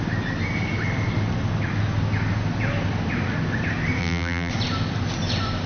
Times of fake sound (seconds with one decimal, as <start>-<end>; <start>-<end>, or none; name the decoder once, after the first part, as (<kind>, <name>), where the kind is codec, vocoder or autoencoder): 4.0-4.5 (vocoder, BigVGAN v2)